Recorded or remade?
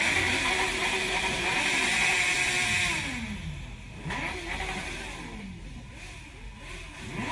recorded